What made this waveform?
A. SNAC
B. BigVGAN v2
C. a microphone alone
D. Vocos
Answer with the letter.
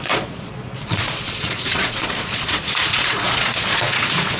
D